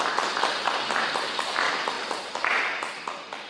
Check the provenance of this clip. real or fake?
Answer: real